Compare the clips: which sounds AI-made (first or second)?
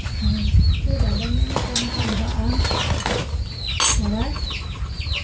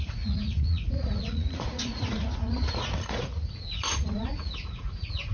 second